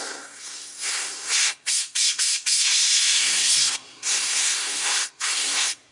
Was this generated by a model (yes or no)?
yes